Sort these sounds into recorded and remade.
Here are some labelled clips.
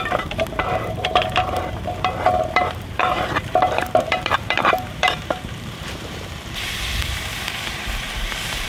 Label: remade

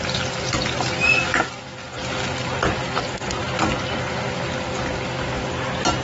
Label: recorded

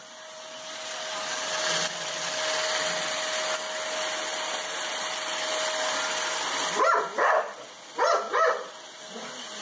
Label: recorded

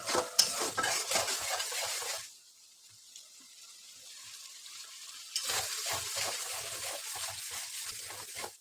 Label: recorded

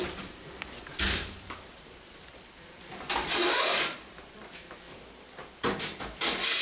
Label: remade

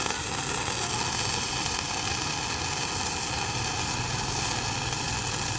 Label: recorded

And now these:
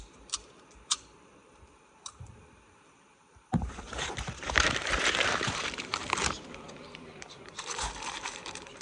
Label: remade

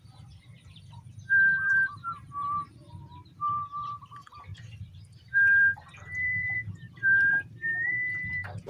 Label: remade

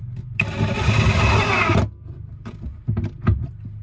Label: recorded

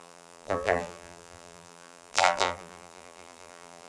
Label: remade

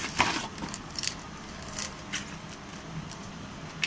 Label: recorded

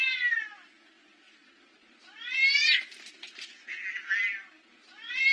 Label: recorded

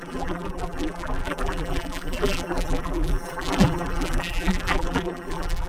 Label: remade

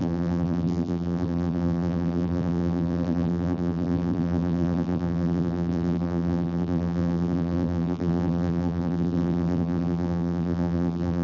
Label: remade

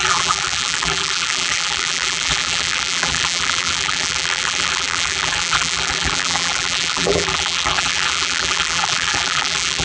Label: remade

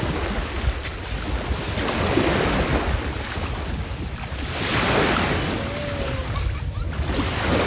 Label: recorded